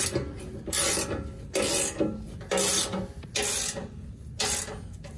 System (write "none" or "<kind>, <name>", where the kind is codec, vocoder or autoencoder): none